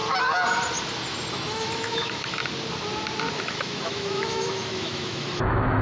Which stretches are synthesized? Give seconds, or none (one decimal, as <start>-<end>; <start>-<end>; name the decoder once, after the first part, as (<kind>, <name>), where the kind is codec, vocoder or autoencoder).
1.3-2.4 (autoencoder, DAC-VAE); 3.3-5.8